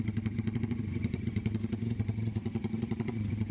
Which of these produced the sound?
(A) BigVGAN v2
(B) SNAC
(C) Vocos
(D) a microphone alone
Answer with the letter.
C